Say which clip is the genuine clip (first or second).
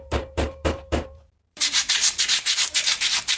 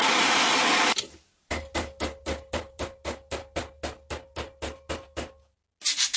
second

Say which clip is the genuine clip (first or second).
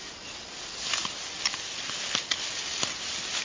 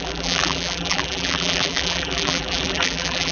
first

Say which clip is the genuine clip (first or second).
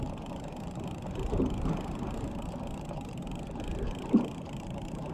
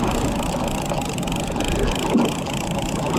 second